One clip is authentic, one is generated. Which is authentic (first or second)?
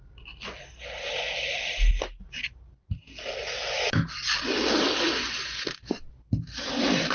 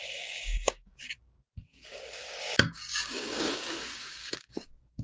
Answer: first